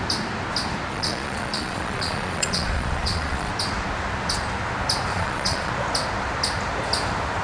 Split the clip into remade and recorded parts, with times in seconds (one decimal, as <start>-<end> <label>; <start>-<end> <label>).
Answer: 0.0-0.9 recorded; 0.9-3.5 remade; 3.5-5.1 recorded; 5.1-5.7 remade; 5.7-7.4 recorded